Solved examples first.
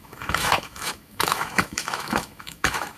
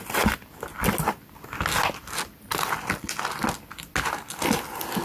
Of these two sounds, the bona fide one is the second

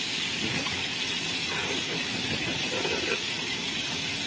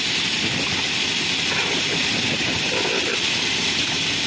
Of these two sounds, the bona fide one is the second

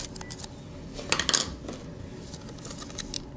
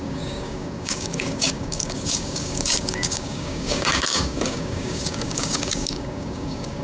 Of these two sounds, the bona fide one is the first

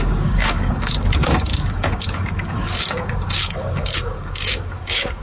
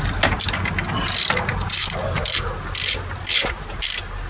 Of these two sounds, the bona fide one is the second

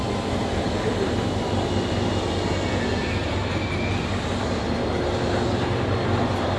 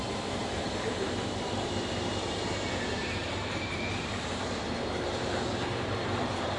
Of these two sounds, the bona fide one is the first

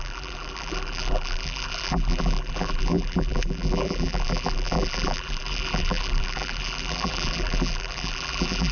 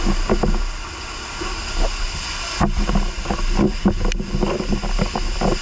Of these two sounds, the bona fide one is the second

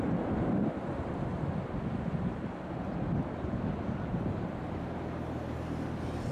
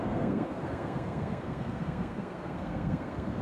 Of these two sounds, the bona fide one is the first